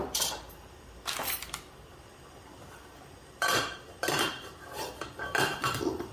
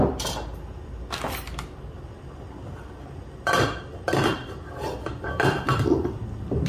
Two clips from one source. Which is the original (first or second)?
second